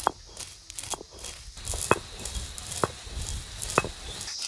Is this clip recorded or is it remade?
recorded